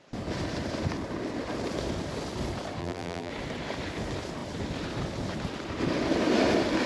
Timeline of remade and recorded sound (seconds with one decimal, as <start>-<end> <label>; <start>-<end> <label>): 0.0-2.8 recorded; 2.8-3.3 remade; 3.3-6.9 recorded